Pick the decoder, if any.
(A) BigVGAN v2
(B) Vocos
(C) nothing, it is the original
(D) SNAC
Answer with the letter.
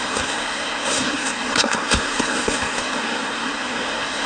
D